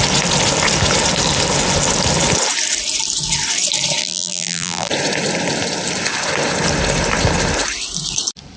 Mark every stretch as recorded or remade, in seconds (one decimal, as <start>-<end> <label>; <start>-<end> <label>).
0.0-4.0 recorded; 4.0-4.9 remade; 4.9-8.6 recorded